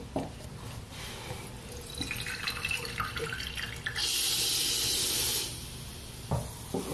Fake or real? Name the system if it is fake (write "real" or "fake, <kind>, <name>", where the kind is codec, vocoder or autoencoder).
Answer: real